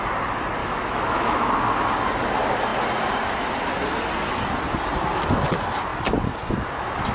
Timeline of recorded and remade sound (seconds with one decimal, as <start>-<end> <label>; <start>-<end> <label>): 0.0-0.6 recorded; 0.6-1.5 remade; 1.5-7.1 recorded